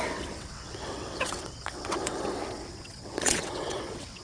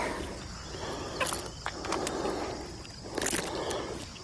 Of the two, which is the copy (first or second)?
first